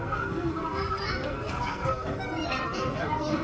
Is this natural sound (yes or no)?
no